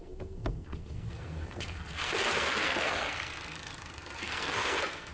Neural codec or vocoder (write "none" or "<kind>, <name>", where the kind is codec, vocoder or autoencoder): codec, SNAC